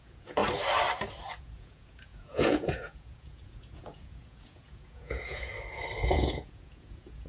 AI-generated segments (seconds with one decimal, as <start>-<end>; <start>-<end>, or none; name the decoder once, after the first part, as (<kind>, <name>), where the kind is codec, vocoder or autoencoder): 0.0-0.4 (vocoder, Vocos); 1.4-5.5; 6.0-7.3